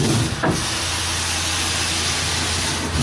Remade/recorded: recorded